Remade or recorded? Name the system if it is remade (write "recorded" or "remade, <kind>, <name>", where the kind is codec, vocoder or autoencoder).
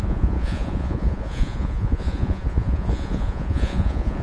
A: remade, vocoder, Vocos